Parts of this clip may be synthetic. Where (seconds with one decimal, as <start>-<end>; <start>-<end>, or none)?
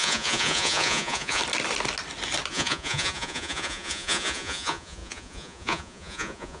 0.0-1.4; 2.5-6.6